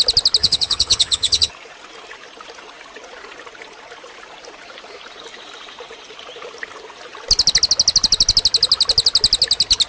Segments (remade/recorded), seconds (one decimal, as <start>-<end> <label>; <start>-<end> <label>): 0.0-0.4 recorded; 0.4-1.5 remade; 1.5-9.9 recorded